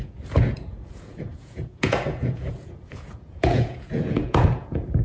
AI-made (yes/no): yes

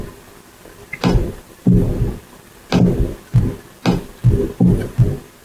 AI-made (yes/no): no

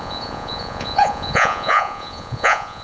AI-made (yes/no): yes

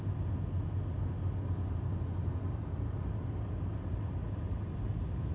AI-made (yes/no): no